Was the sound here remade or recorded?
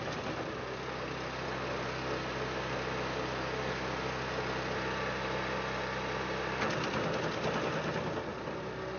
recorded